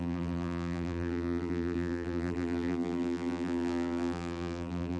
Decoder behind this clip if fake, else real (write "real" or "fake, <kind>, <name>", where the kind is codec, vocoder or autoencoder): fake, vocoder, BigVGAN v2